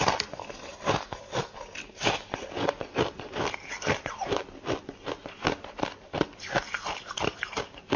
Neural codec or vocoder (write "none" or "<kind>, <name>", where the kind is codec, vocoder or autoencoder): none